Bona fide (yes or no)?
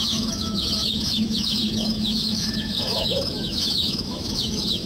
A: no